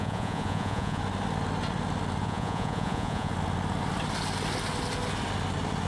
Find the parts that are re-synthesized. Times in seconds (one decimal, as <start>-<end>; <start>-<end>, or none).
0.0-1.0; 2.2-3.3